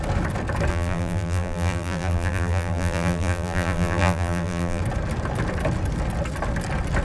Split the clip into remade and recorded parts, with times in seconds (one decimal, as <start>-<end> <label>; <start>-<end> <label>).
0.0-0.7 recorded; 0.7-4.8 remade; 4.8-7.0 recorded